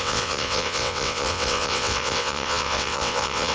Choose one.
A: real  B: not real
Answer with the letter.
B